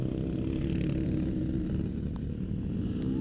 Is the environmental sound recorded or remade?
recorded